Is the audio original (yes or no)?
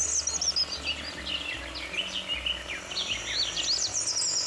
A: yes